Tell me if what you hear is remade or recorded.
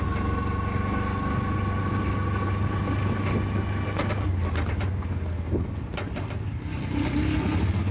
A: recorded